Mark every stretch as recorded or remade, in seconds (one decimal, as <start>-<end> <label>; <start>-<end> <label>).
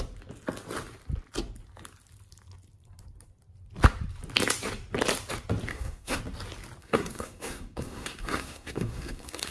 0.0-5.7 recorded; 5.7-6.2 remade; 6.2-6.8 recorded; 6.8-9.5 remade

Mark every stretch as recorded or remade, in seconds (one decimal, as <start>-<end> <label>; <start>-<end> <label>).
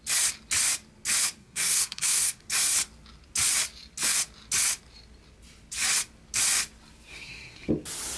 0.0-1.4 recorded; 1.4-2.4 remade; 2.4-7.1 recorded; 7.1-7.7 remade; 7.7-8.2 recorded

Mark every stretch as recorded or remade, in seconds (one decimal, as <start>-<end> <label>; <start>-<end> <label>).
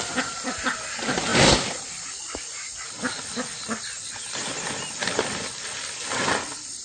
0.0-6.8 recorded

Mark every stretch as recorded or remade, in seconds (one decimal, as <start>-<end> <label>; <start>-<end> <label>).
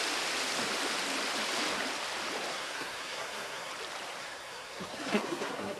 0.0-2.5 recorded; 2.5-3.7 remade; 3.7-4.2 recorded; 4.2-5.8 remade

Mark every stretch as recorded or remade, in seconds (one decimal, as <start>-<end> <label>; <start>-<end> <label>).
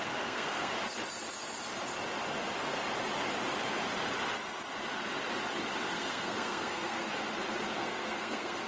0.0-0.7 remade; 0.7-5.9 recorded; 5.9-7.1 remade; 7.1-7.7 recorded; 7.7-8.7 remade